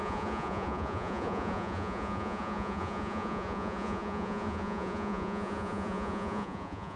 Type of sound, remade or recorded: remade